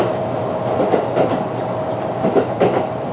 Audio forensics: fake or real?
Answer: real